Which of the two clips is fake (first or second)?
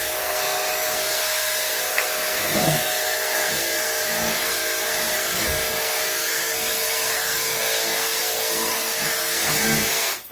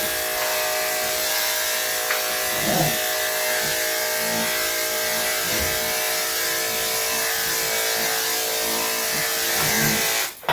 first